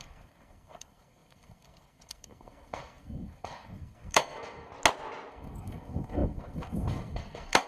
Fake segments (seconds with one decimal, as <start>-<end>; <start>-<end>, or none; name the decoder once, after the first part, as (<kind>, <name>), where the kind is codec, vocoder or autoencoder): 0.0-4.7 (codec, SNAC); 5.3-7.7